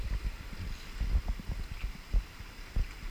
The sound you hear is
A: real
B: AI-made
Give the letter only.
A